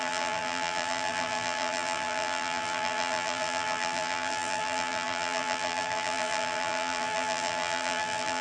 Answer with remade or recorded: remade